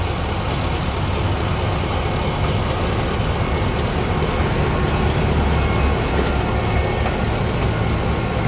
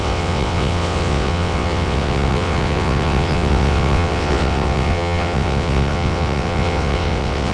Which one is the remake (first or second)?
second